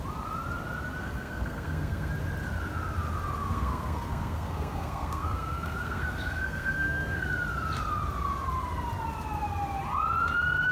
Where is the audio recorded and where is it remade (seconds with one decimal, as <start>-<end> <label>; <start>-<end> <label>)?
0.0-1.0 recorded; 1.0-2.1 remade; 2.1-3.4 recorded; 3.4-7.3 remade; 7.3-10.7 recorded